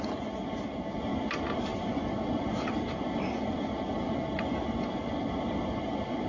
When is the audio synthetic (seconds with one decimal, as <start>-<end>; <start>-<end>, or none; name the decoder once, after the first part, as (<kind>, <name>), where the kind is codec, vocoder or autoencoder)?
none

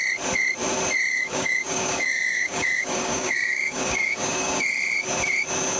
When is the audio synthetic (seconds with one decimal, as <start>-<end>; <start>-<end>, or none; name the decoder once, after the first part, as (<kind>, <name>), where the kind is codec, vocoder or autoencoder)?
1.1-4.6 (codec, DAC)